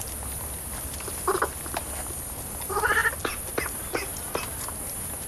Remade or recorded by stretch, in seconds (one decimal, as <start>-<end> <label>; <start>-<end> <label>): 0.0-5.3 recorded